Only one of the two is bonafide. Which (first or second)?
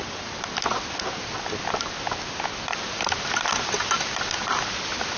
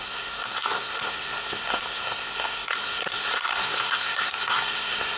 first